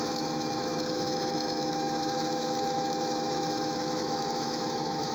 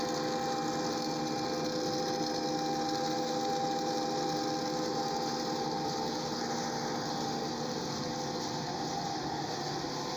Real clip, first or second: second